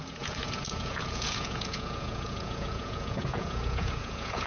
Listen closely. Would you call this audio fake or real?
fake